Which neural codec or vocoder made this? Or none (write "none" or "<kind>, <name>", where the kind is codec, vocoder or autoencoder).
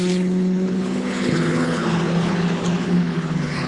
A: codec, HILCodec